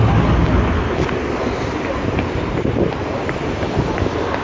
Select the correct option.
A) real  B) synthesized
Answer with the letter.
A